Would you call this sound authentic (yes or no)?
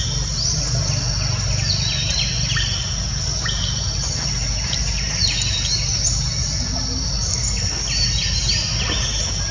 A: yes